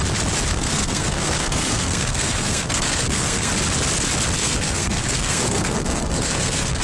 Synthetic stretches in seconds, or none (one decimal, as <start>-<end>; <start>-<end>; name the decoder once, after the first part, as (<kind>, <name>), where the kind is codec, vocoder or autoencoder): 0.5-3.5 (codec, SNAC); 4.4-6.8